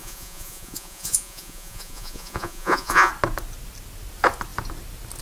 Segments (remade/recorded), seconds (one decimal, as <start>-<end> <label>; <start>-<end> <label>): 0.0-3.1 remade; 3.1-5.2 recorded